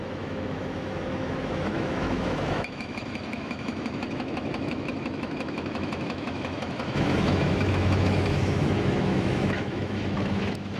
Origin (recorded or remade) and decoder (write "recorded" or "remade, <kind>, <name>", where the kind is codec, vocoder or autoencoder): remade, autoencoder, DAC-VAE